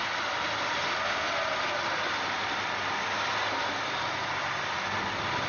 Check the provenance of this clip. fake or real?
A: real